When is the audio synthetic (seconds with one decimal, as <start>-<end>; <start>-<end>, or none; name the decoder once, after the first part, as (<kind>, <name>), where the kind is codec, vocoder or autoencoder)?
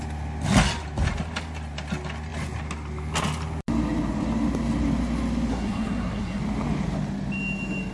5.5-6.4 (codec, SNAC)